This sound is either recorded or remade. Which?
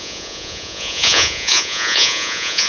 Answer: remade